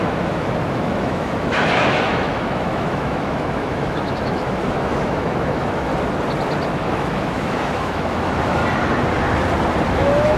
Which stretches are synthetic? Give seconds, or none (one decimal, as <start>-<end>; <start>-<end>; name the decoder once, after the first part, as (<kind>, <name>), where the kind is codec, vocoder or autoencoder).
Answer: 0.0-5.9 (autoencoder, DAC-VAE); 6.7-8.6; 9.9-10.4